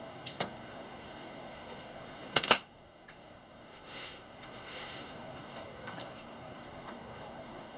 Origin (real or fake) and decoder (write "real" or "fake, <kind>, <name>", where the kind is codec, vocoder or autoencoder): fake, codec, SNAC